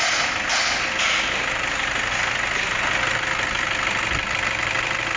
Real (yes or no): yes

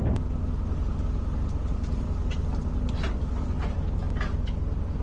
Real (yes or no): yes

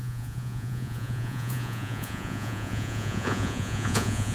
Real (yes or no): no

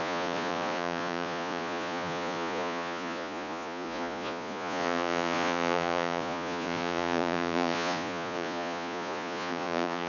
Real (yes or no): no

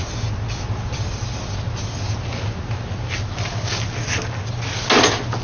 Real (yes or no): yes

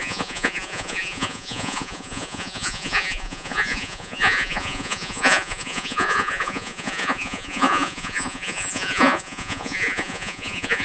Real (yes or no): no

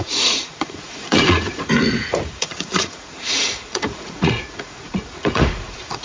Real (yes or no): no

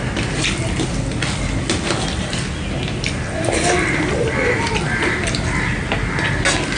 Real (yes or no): yes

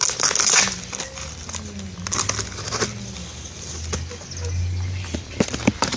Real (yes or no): yes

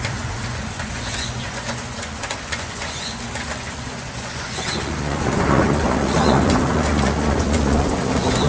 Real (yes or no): no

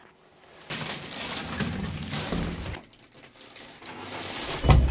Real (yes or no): yes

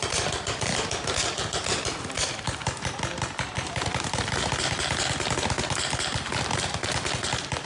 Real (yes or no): yes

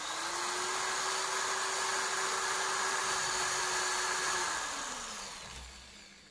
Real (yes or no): yes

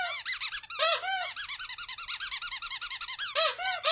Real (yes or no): yes